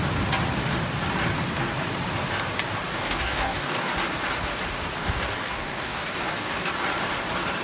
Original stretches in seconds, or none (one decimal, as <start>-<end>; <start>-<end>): 0.0-2.9; 3.9-5.0; 6.7-7.6